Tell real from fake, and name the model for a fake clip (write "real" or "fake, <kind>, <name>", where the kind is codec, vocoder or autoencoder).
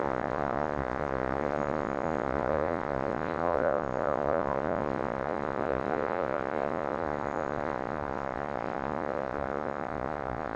fake, vocoder, Vocos